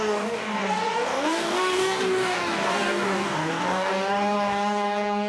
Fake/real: fake